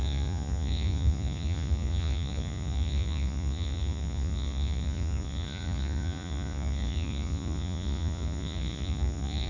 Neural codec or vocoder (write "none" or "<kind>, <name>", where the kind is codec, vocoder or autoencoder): vocoder, Vocos